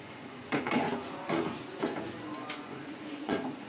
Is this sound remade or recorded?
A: remade